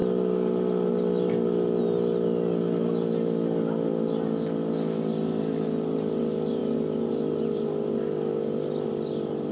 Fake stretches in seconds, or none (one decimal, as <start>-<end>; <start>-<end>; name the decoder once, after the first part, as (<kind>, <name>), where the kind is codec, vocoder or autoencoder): none